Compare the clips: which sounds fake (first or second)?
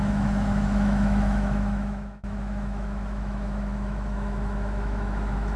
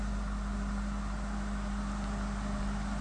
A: first